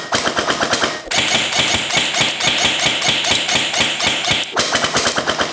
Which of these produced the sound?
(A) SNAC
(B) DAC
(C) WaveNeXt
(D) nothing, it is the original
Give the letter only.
D